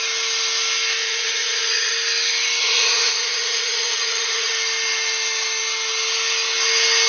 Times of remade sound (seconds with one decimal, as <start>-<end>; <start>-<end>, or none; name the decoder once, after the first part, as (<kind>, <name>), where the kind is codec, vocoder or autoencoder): 1.0-1.9 (vocoder, Vocos); 2.6-4.5